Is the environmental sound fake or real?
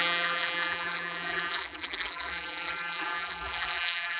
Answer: fake